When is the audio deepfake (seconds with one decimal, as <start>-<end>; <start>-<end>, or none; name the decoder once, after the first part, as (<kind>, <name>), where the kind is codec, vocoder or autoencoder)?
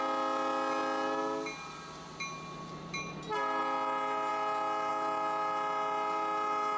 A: none